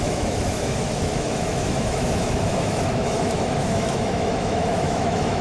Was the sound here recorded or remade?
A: remade